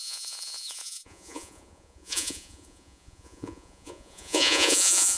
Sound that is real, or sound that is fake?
fake